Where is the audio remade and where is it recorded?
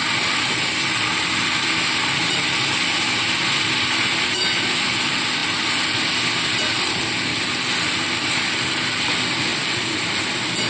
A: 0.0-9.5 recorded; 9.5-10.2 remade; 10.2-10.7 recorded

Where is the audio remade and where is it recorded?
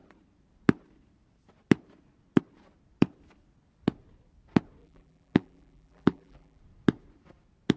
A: 0.0-4.8 recorded; 4.8-6.6 remade; 6.6-7.8 recorded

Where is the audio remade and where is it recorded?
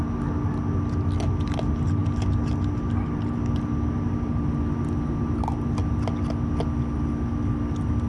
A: 0.0-8.1 recorded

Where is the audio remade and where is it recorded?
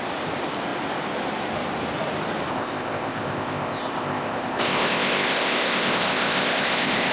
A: 0.0-2.5 recorded; 2.5-7.1 remade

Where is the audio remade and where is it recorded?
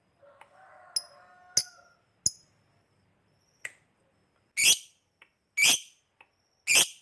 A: 0.0-7.0 recorded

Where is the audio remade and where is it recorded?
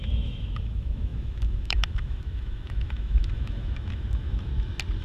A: 0.0-4.5 remade; 4.5-5.0 recorded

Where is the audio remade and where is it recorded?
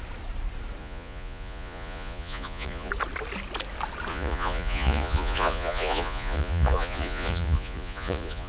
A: 0.0-0.8 recorded; 0.8-2.9 remade; 2.9-4.1 recorded; 4.1-8.5 remade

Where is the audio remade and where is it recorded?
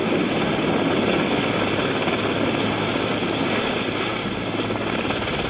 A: 0.0-0.6 remade; 0.6-5.5 recorded